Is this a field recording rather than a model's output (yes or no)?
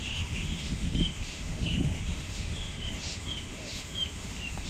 no